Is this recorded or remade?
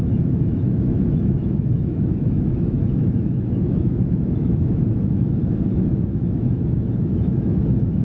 remade